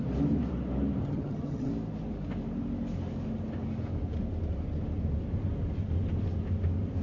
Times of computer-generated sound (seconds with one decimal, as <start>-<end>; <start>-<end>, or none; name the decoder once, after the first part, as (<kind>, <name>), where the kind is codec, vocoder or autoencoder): 1.0-1.7 (vocoder, HiFi-GAN)